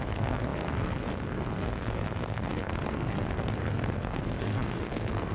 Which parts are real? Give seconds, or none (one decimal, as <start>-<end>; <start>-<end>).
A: none